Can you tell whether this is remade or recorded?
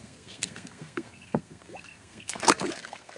remade